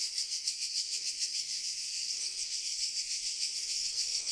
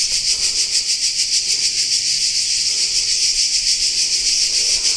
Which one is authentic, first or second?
second